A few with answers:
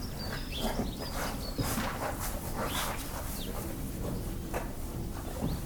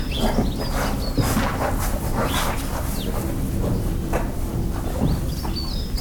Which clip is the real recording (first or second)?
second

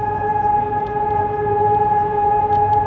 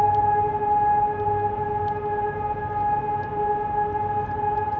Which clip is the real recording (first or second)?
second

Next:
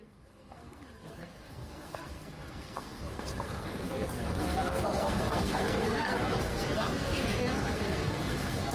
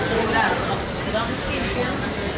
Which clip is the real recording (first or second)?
second